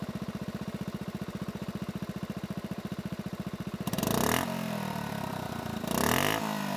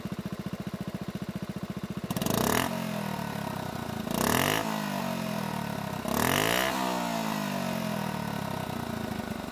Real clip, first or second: second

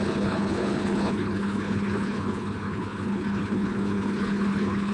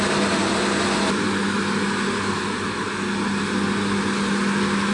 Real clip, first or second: second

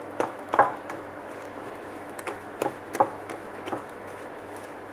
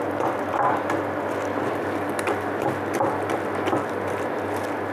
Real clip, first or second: second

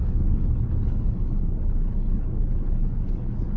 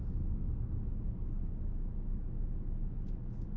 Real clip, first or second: second